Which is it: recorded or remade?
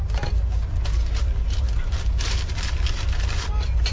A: recorded